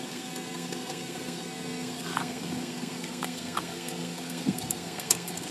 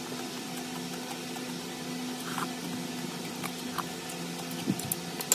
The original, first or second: second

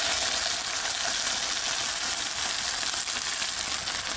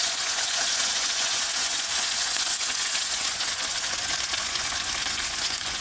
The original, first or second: first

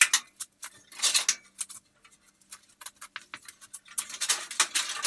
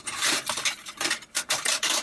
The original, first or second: first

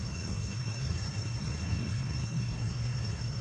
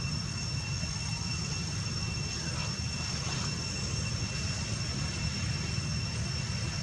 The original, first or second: second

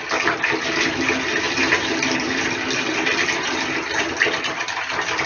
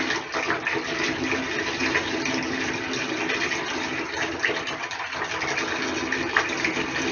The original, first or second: second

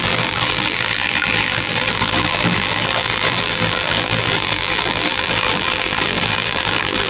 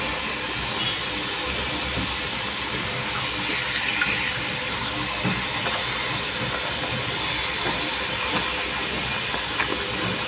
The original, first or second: second